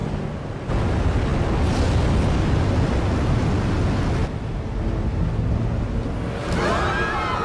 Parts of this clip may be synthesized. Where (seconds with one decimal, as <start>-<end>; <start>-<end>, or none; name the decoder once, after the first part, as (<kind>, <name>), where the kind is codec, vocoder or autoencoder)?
none